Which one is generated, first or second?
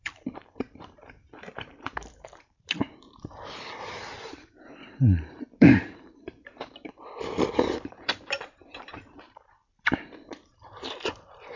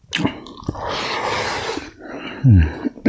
first